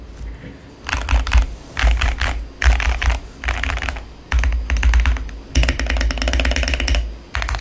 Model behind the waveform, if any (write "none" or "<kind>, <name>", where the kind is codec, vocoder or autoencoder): none